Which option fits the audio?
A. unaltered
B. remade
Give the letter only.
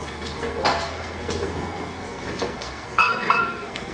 B